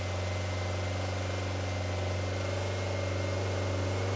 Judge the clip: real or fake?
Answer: real